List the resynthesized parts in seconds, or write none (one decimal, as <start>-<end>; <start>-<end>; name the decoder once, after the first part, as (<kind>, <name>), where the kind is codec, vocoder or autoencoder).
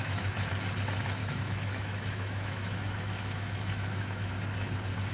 0.0-0.5 (autoencoder, DAC-VAE); 1.2-4.3